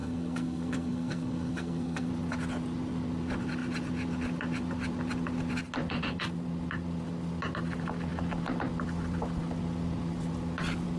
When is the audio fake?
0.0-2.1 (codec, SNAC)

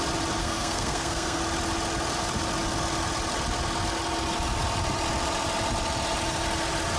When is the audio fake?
0.4-1.4 (codec, SNAC)

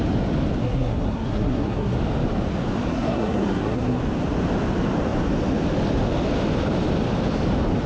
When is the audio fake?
0.6-2.0 (codec, SNAC); 2.9-4.0

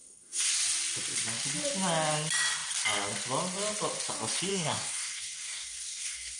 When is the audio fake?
0.0-0.5 (codec, SNAC); 4.5-6.4

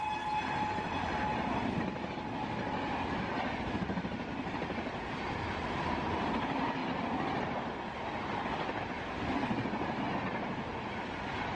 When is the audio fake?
none

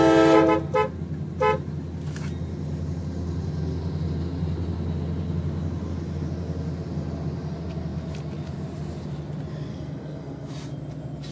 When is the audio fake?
9.7-10.5 (codec, SNAC)

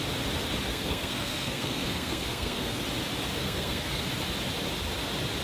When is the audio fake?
0.7-2.8 (codec, SNAC); 3.4-4.1